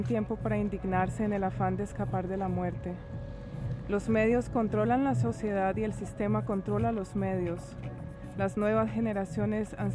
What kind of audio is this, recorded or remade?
recorded